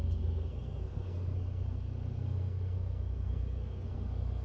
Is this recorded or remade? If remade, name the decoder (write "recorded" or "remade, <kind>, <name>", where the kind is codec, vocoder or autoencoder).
remade, codec, SNAC